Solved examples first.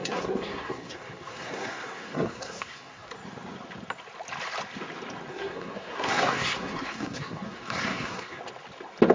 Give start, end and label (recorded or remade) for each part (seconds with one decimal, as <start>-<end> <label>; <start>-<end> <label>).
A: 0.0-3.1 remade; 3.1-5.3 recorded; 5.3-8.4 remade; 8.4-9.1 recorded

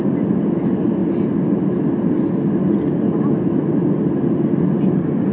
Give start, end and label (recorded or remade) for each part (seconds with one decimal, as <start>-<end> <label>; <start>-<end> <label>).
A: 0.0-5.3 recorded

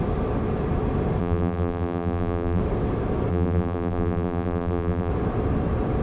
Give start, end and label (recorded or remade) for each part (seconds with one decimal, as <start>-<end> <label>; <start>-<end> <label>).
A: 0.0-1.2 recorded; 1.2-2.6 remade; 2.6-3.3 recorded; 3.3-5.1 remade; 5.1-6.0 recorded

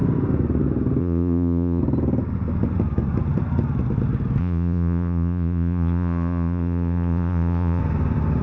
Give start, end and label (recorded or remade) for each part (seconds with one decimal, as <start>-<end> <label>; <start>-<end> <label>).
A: 0.0-1.0 recorded; 1.0-1.8 remade; 1.8-4.4 recorded; 4.4-7.8 remade; 7.8-8.4 recorded

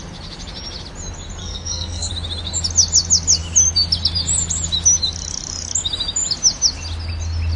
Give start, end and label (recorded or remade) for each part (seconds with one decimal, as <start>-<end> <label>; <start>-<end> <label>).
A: 0.0-1.4 recorded; 1.4-2.1 remade; 2.1-7.6 recorded

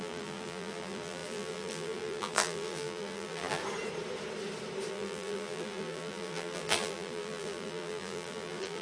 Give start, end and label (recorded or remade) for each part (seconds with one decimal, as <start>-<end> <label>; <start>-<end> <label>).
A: 0.0-3.6 remade; 3.6-4.9 recorded; 4.9-8.8 remade

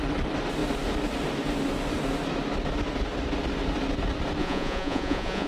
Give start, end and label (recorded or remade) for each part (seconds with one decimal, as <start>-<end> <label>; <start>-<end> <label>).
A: 0.0-4.4 recorded; 4.4-5.5 remade

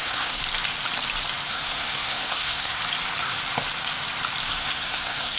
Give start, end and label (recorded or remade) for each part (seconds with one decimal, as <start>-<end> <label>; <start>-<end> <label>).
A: 0.0-0.4 remade; 0.4-1.5 recorded; 1.5-2.8 remade; 2.8-4.5 recorded; 4.5-5.4 remade